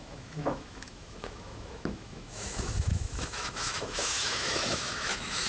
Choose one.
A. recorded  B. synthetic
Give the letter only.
B